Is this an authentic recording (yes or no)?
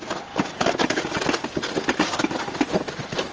yes